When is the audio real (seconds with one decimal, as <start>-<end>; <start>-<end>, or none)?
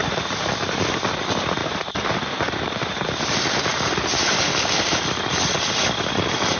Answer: 1.2-1.6; 3.2-3.7; 4.4-6.6